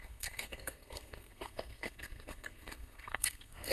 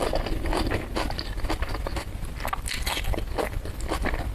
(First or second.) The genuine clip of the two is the second